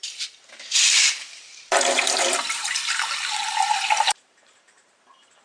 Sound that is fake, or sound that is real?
fake